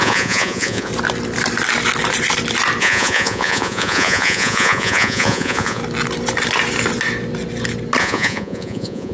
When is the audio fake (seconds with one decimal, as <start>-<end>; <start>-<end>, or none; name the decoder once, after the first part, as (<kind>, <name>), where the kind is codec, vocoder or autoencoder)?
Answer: 0.0-0.9 (vocoder, Vocos); 2.8-5.8; 8.0-9.1